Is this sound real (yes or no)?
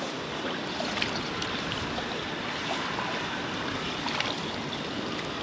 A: yes